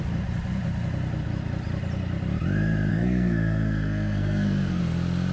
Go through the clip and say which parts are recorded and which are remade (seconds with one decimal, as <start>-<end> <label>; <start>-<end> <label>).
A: 0.0-2.9 recorded; 2.9-4.8 remade; 4.8-5.3 recorded

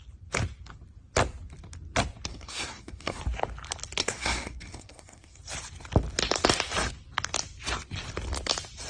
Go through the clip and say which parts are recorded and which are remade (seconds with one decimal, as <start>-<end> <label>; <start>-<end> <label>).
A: 0.0-2.3 recorded; 2.3-3.2 remade; 3.2-4.0 recorded; 4.0-5.4 remade; 5.4-8.9 recorded

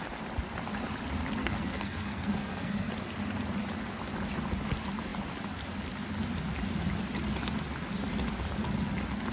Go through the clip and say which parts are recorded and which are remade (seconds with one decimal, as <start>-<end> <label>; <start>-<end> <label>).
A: 0.0-1.4 recorded; 1.4-2.9 remade; 2.9-9.3 recorded

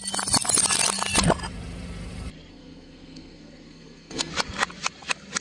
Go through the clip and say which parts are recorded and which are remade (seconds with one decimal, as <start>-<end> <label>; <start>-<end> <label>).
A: 0.0-2.5 recorded; 2.5-4.3 remade; 4.3-5.4 recorded

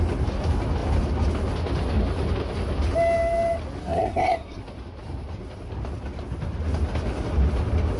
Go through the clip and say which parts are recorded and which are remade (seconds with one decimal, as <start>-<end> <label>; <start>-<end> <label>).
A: 0.0-3.8 recorded; 3.8-4.6 remade; 4.6-8.0 recorded

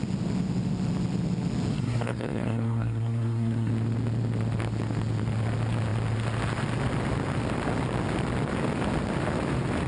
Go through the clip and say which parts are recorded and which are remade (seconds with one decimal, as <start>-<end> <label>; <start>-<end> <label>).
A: 0.0-1.7 recorded; 1.7-3.7 remade; 3.7-9.9 recorded